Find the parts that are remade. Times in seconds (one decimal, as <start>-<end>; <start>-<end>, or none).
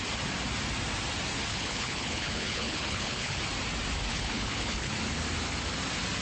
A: 1.5-3.4; 4.1-4.9